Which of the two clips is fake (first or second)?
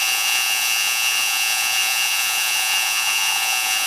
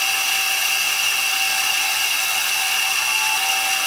first